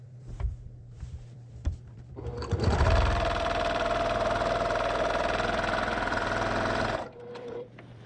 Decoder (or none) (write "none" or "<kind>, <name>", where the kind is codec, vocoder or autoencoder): vocoder, BigVGAN v2